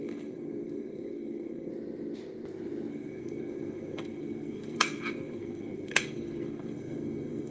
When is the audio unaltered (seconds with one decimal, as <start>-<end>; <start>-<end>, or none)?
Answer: 1.7-2.9